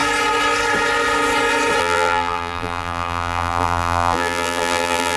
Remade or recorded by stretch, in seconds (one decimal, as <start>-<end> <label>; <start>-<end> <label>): 0.0-1.8 recorded; 1.8-5.2 remade